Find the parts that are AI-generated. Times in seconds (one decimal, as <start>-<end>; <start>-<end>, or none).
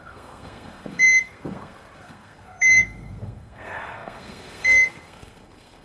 0.0-5.8